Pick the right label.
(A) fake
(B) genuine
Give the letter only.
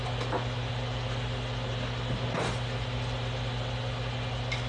B